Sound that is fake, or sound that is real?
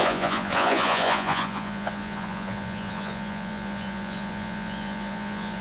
fake